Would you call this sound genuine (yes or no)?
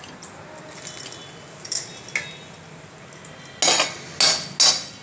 yes